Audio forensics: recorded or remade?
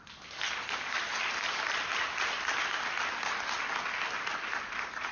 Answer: recorded